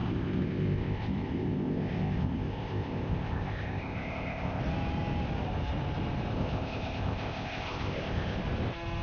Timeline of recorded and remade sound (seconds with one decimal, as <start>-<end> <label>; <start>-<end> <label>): 0.0-4.6 remade; 4.6-6.3 recorded; 6.3-8.4 remade; 8.4-9.0 recorded